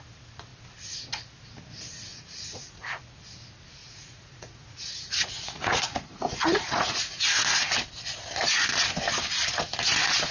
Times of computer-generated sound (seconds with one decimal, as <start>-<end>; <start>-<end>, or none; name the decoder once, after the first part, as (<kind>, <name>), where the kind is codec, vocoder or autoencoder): 2.1-3.0 (vocoder, Vocos); 3.8-7.2